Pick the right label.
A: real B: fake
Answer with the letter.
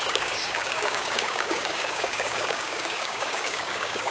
B